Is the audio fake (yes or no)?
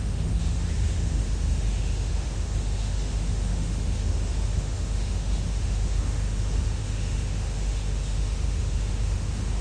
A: yes